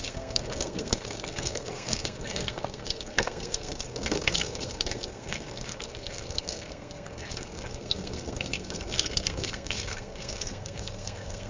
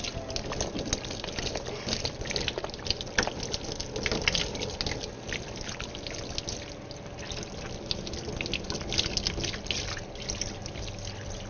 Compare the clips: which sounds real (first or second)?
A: second